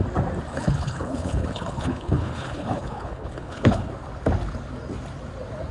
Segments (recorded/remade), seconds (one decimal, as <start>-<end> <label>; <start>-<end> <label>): 0.0-0.5 recorded; 0.5-3.9 remade; 3.9-5.7 recorded